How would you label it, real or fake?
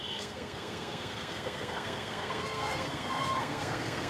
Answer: fake